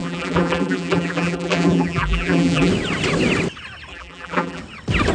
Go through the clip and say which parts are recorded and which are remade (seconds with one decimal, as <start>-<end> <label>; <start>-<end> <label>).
0.0-2.7 remade; 2.7-3.9 recorded; 3.9-4.6 remade; 4.6-5.1 recorded